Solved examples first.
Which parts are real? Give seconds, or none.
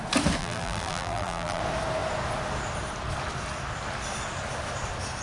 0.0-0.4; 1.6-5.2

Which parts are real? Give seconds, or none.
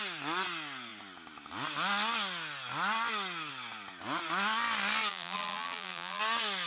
0.0-5.1; 6.2-6.7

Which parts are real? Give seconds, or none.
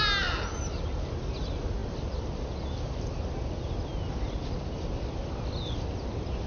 0.0-6.5